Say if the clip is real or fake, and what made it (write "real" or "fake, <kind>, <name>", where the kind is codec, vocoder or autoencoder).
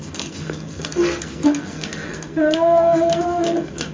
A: fake, codec, SNAC